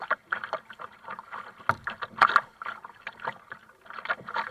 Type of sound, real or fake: real